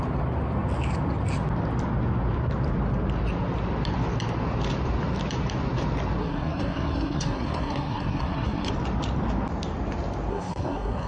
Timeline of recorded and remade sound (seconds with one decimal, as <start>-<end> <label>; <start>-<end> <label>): 0.0-6.2 recorded; 6.2-8.7 remade; 8.7-10.3 recorded; 10.3-11.1 remade